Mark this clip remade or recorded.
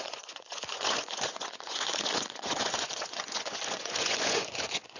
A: remade